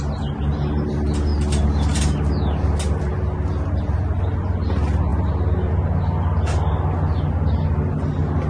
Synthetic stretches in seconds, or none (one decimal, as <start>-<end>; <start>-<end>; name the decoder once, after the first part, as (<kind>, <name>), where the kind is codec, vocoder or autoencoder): none